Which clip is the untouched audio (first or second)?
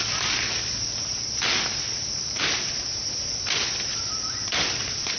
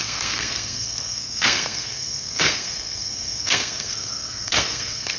first